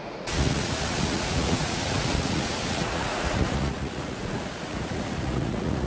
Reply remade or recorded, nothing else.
remade